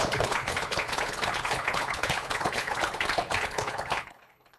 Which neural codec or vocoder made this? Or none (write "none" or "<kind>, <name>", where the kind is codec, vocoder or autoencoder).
codec, HILCodec